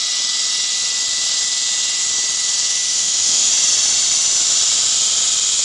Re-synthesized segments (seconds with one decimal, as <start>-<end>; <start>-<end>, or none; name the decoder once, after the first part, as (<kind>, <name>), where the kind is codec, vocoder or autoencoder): 2.8-3.5 (autoencoder, DAC-VAE)